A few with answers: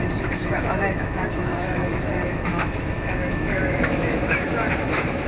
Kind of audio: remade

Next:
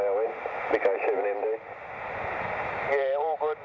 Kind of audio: recorded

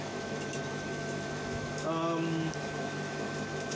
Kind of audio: remade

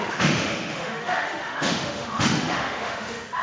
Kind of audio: remade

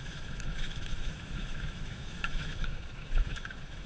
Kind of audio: remade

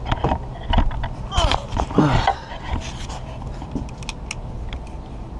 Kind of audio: recorded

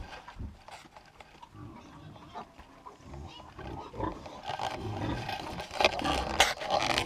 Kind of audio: recorded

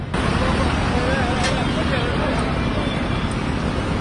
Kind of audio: recorded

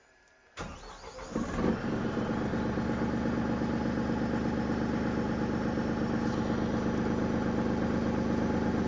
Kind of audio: recorded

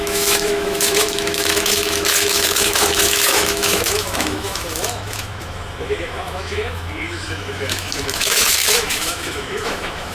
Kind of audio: remade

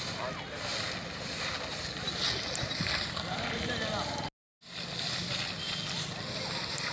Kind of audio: recorded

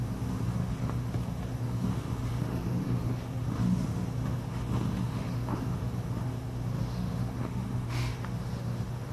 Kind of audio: remade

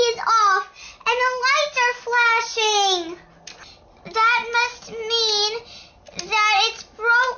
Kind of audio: recorded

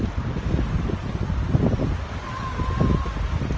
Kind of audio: recorded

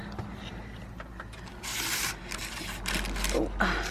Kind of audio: recorded